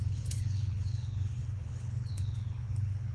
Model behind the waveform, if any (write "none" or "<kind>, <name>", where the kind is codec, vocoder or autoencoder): codec, HILCodec